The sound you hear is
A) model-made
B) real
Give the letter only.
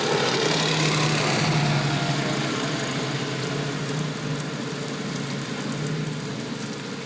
B